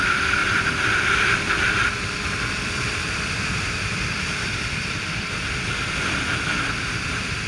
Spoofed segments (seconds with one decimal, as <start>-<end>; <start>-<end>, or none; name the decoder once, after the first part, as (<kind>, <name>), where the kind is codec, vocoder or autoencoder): 0.0-7.5 (vocoder, BigVGAN v2)